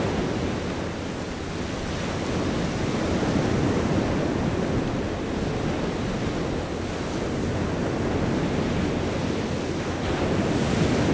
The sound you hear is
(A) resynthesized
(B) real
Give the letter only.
B